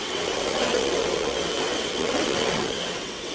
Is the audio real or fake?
fake